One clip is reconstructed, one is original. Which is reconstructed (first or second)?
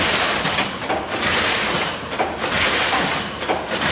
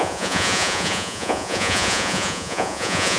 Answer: second